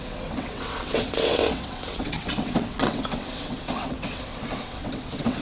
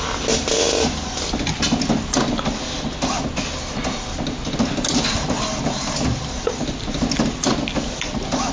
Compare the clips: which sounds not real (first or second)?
first